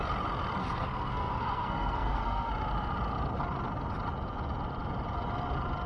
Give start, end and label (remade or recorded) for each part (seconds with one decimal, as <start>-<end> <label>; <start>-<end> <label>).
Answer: 0.0-0.6 recorded; 0.6-2.5 remade; 2.5-5.9 recorded